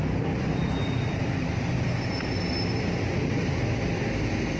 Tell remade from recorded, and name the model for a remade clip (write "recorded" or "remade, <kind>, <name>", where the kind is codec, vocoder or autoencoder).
recorded